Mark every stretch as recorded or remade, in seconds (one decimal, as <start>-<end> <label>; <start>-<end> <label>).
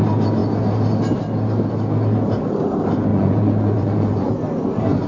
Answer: 0.0-3.1 recorded; 3.1-4.3 remade; 4.3-5.1 recorded